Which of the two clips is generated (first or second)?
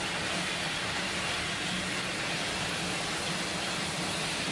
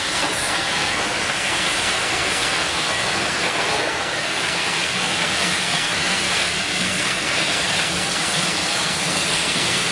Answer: second